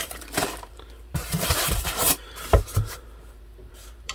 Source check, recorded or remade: remade